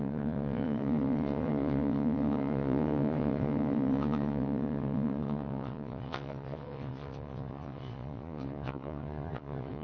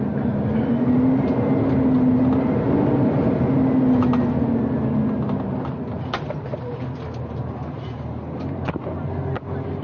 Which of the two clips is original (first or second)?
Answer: second